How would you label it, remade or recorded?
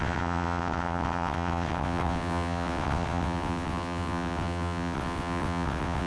remade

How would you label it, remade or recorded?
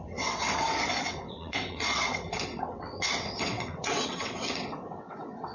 remade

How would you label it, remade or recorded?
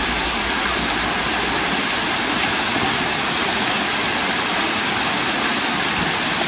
recorded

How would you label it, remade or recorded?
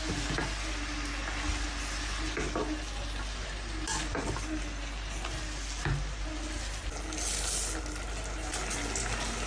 recorded